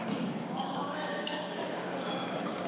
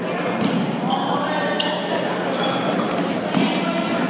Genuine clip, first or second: second